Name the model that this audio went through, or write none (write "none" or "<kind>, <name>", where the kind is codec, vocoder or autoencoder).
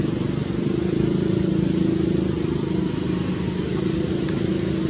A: none